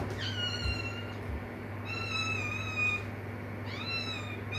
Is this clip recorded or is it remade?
recorded